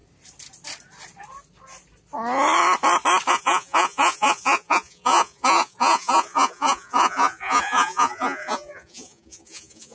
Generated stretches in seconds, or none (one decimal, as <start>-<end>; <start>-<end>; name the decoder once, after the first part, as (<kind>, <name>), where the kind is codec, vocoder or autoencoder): 3.3-9.9 (vocoder, Vocos)